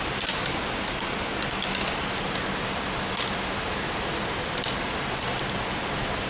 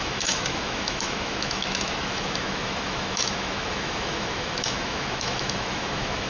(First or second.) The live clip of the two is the first